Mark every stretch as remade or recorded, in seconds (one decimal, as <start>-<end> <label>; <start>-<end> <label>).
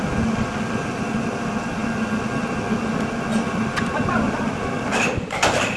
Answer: 0.0-5.8 recorded